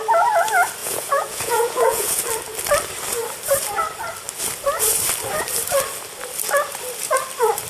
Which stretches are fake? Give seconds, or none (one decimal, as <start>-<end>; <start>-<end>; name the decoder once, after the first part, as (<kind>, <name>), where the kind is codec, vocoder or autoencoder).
0.8-2.2 (vocoder, Vocos)